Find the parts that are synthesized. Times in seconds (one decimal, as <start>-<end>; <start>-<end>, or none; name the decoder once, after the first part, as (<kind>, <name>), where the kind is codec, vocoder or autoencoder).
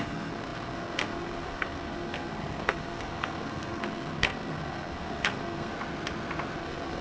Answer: 0.0-5.7 (codec, SNAC); 6.6-7.0